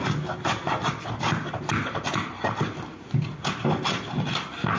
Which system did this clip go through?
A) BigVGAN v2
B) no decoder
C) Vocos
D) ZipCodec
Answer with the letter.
B